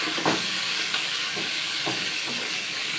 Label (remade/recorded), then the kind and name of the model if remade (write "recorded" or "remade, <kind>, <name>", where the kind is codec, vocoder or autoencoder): remade, codec, DAC